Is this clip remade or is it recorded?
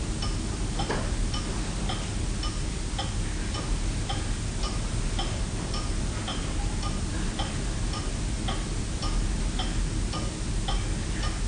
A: recorded